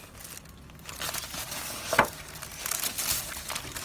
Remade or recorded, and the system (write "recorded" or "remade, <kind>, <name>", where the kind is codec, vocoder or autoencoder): recorded